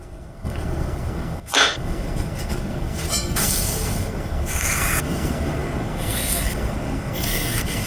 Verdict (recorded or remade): remade